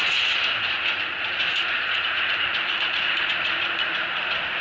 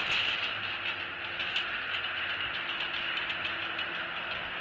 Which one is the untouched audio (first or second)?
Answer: second